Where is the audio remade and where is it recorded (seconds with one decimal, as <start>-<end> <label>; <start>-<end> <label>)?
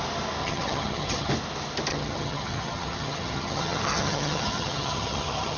0.0-0.4 recorded; 0.4-1.3 remade; 1.3-1.9 recorded; 1.9-5.6 remade